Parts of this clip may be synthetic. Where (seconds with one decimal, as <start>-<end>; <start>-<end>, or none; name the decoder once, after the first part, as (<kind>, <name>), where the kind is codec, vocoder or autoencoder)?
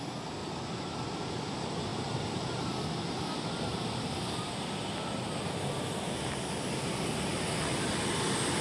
0.4-1.4 (vocoder, BigVGAN v2)